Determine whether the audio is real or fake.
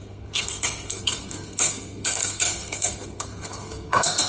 fake